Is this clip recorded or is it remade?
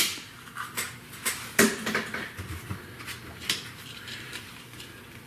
remade